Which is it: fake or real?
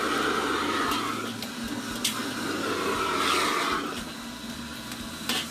real